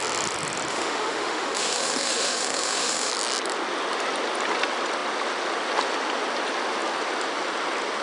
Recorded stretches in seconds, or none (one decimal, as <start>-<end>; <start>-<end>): 0.0-0.7; 3.1-8.0